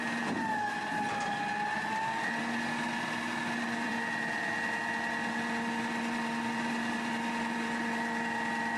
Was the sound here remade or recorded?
remade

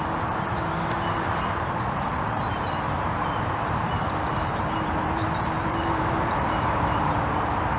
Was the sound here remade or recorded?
remade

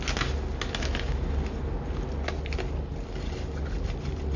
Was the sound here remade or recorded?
recorded